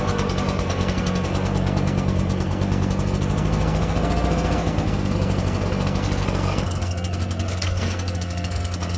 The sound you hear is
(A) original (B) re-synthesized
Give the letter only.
B